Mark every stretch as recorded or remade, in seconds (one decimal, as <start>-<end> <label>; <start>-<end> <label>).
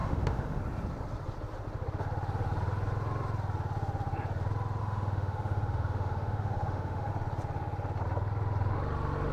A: 0.0-0.6 remade; 0.6-4.8 recorded; 4.8-7.1 remade; 7.1-9.3 recorded